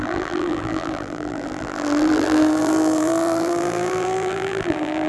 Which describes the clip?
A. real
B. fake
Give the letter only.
B